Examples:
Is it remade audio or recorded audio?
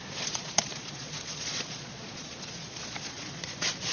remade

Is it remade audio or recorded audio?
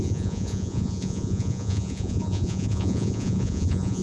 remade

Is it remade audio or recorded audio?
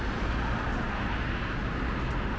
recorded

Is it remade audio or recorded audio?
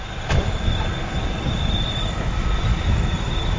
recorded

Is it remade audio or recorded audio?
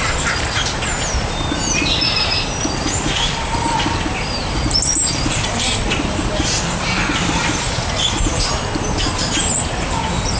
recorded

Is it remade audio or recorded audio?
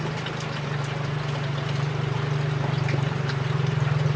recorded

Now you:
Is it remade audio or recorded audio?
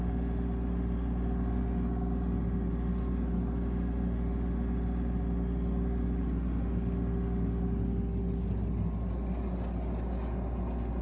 recorded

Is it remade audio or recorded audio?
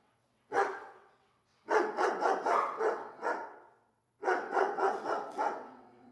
remade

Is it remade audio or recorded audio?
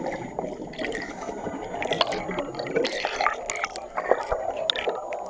recorded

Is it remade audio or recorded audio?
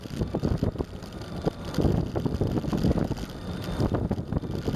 recorded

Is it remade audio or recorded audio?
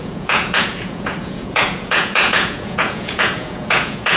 remade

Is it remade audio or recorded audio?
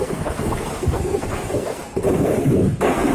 remade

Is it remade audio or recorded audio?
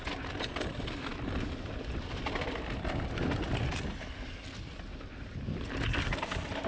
recorded